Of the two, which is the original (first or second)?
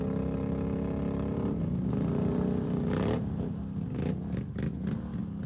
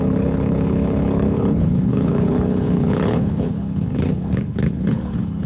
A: first